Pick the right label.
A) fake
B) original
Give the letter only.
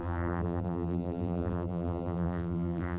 A